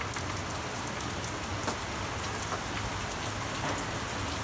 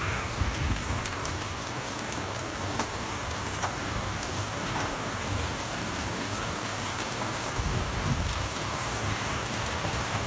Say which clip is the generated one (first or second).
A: second